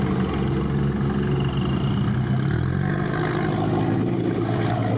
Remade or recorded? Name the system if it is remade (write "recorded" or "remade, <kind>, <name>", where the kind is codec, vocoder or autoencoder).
recorded